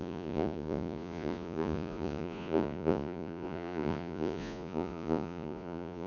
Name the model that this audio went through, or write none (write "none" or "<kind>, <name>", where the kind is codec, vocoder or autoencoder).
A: vocoder, Vocos